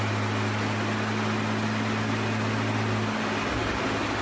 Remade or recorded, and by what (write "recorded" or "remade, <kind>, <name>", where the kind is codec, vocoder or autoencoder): recorded